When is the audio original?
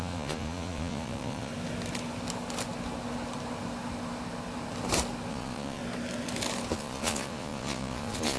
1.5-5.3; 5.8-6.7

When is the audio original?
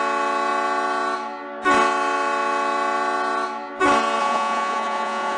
0.0-4.2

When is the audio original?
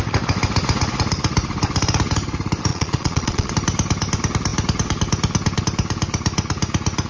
0.0-2.7; 3.5-7.1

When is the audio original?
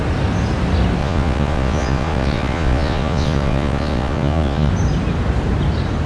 0.0-1.0; 4.7-6.1